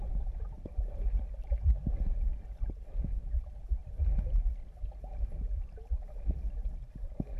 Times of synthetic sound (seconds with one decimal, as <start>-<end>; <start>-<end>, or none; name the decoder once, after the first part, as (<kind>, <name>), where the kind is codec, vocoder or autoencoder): none